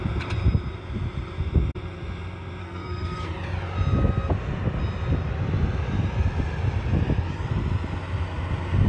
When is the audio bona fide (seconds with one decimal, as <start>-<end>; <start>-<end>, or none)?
0.0-2.6; 3.3-8.9

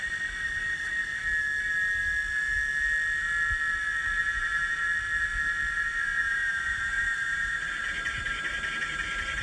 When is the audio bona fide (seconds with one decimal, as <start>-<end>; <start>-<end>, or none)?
0.0-4.2; 4.8-6.2

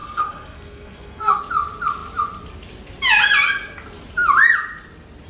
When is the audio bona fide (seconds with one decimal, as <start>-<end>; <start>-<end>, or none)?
1.4-5.3

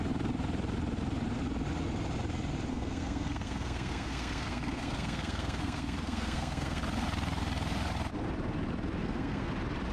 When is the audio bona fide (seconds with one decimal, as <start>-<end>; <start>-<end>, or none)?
0.0-2.7; 6.8-9.0; 9.5-9.9

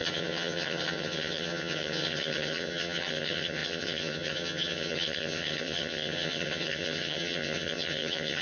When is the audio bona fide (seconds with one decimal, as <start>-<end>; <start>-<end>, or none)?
none

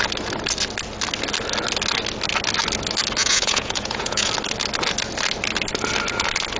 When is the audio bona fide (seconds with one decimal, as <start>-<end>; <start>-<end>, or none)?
0.0-3.2; 4.3-6.6

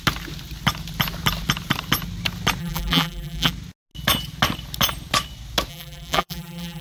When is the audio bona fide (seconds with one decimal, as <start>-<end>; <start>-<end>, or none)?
0.0-2.6; 3.5-5.7

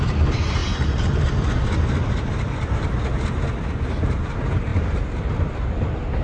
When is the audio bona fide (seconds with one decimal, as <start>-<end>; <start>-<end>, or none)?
0.0-6.2